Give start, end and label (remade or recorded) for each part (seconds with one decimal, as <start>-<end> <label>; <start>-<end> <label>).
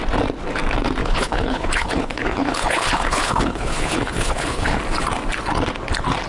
0.0-1.0 recorded; 1.0-4.8 remade; 4.8-6.3 recorded